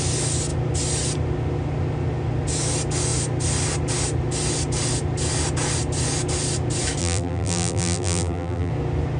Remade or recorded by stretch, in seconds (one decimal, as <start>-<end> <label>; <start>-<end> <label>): 0.0-7.0 recorded; 7.0-8.7 remade; 8.7-9.2 recorded